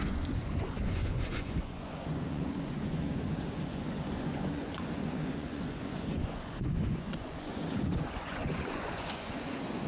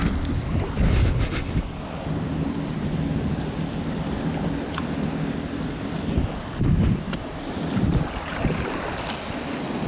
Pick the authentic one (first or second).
second